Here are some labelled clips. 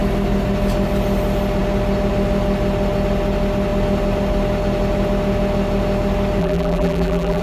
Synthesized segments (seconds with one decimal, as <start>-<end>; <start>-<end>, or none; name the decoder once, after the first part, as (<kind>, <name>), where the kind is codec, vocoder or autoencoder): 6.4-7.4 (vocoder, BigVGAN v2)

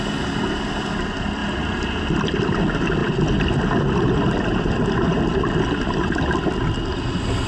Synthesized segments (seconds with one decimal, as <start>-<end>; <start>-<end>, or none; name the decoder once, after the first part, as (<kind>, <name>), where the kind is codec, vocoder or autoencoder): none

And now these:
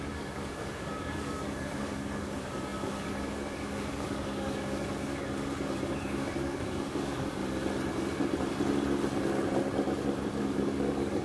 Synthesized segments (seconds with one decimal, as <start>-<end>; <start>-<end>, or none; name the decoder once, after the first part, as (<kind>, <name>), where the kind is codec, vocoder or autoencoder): 0.0-7.4 (codec, DAC); 10.4-11.2

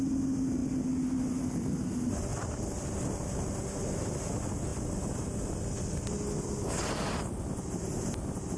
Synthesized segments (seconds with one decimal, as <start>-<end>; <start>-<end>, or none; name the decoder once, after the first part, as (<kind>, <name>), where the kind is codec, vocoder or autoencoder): none